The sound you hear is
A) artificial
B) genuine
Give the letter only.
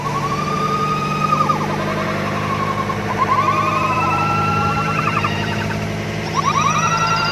B